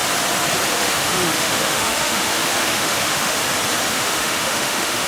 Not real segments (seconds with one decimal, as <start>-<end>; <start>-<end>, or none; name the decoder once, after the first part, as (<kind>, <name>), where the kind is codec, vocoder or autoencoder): 0.7-3.4 (autoencoder, DAC-VAE); 3.9-5.1